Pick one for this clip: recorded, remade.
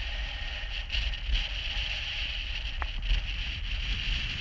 recorded